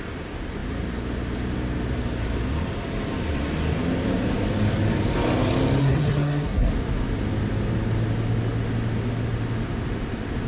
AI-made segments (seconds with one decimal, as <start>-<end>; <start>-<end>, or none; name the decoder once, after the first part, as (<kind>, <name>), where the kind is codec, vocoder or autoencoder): 5.8-6.7 (codec, SNAC)

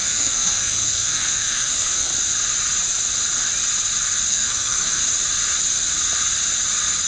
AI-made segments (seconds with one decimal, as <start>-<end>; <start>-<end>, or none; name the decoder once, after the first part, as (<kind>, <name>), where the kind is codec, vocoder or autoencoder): 0.0-2.1 (codec, SNAC); 4.3-5.0

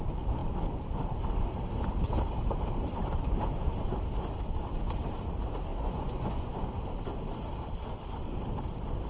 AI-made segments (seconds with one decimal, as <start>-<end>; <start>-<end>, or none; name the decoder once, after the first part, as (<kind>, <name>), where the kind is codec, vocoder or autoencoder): 5.7-6.5 (vocoder, Vocos)

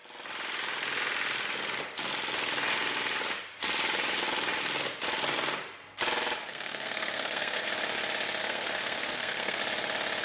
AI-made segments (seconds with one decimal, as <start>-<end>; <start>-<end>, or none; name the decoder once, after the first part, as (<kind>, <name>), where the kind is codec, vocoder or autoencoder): 6.5-7.7 (codec, SNAC); 8.4-9.6

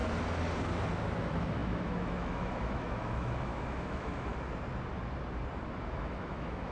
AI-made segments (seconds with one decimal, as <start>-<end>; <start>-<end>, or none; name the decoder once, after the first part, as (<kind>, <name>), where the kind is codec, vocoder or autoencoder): 1.2-4.3 (autoencoder, DAC-VAE); 5.9-6.7

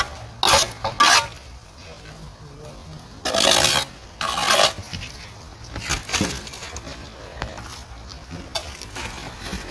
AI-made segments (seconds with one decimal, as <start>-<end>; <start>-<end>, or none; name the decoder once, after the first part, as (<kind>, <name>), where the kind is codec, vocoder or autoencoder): none